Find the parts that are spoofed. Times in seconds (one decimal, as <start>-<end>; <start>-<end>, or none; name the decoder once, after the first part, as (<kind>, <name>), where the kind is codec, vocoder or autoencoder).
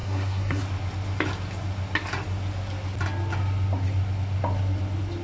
0.0-0.6 (codec, SNAC)